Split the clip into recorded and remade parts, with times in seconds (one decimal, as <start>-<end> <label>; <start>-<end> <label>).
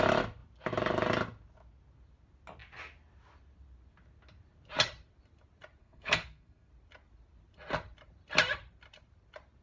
0.0-5.8 recorded; 5.8-6.7 remade; 6.7-9.6 recorded